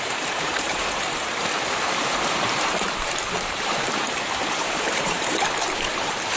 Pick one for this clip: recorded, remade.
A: remade